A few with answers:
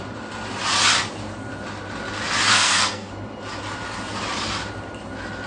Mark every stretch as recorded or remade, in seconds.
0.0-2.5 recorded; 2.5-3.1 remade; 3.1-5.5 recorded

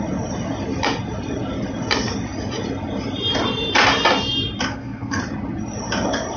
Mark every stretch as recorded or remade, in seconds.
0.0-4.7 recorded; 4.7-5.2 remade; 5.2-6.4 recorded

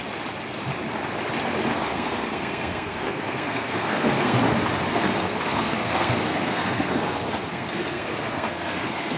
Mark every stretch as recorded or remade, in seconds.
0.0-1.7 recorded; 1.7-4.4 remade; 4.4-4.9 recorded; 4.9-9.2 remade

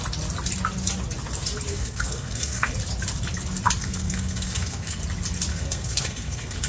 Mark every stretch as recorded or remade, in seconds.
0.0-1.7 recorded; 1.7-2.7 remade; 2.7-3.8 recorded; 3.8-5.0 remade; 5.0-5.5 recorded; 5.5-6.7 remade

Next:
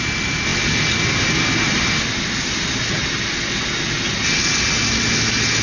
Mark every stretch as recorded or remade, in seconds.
0.0-5.6 recorded

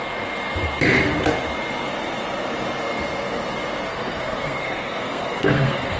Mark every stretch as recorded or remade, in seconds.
0.0-3.9 recorded; 3.9-6.0 remade